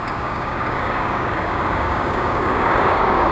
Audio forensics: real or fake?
fake